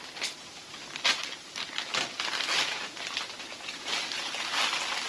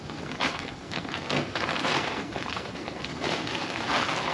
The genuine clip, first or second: first